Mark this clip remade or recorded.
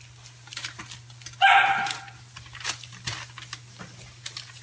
recorded